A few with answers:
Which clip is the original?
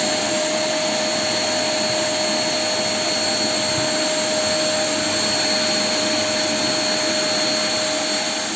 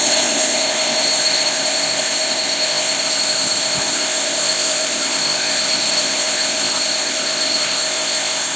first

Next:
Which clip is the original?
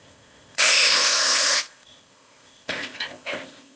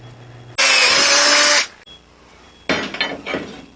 second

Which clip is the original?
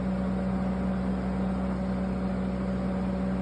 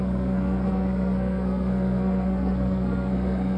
first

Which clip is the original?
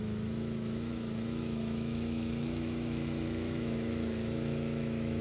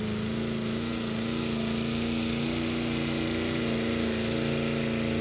second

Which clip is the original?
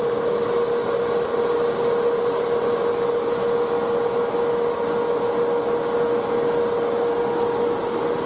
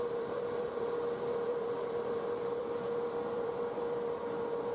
first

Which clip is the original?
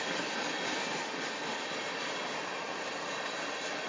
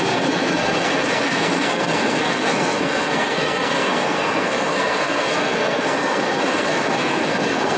first